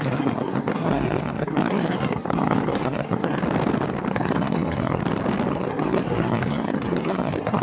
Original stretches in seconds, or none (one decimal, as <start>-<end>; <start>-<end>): 3.4-4.1; 5.0-5.5